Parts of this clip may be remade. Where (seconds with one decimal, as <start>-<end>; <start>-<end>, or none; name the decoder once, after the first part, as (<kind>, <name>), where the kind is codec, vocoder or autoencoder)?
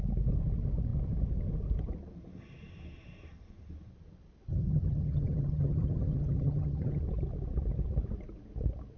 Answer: 4.5-7.0 (vocoder, HiFi-GAN)